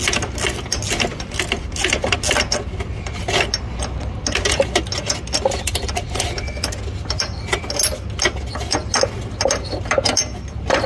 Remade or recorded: recorded